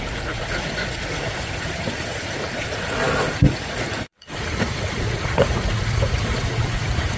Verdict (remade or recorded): remade